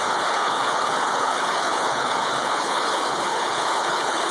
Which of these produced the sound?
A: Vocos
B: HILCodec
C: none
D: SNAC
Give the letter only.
B